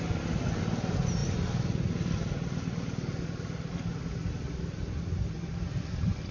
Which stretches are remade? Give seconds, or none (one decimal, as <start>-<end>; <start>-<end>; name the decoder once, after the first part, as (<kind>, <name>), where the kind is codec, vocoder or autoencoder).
none